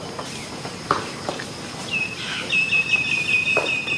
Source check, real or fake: fake